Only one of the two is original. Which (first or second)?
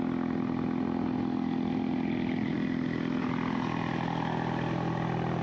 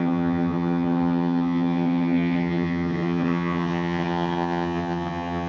first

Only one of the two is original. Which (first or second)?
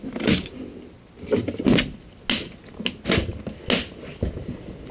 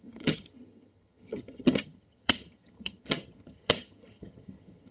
first